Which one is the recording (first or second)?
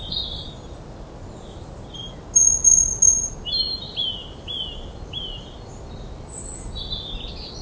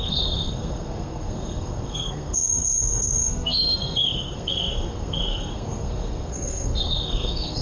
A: first